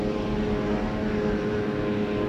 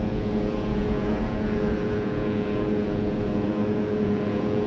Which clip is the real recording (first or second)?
first